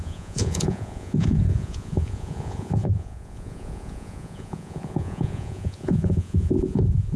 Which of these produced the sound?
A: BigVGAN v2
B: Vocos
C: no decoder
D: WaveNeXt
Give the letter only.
B